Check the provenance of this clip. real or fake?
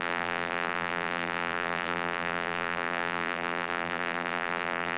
fake